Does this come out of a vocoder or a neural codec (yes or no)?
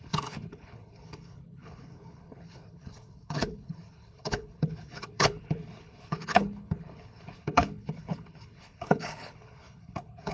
yes